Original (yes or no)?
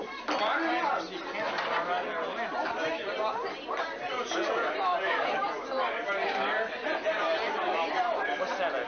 yes